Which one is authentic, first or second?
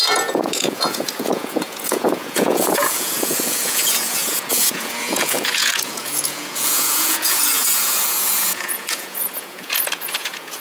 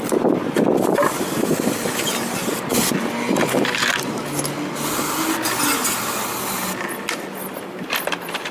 second